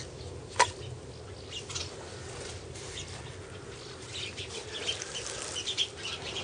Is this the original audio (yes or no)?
yes